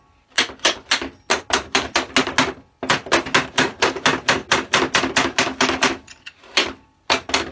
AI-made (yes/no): no